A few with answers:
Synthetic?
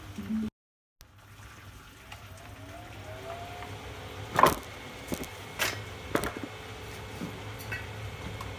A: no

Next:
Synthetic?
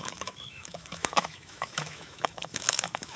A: yes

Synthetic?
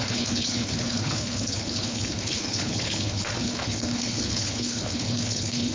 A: yes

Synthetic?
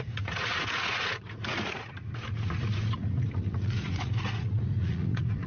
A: yes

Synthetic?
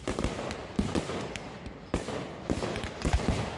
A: no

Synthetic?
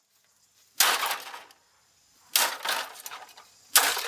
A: no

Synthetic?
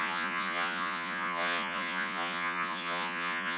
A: yes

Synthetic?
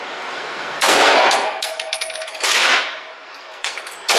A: yes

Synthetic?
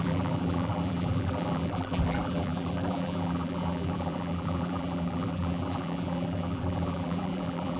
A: yes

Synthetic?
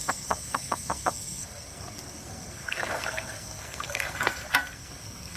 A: yes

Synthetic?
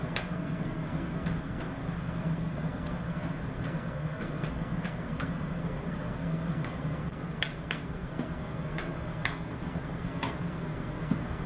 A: yes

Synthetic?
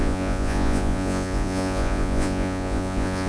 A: yes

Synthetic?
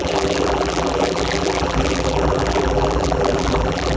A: yes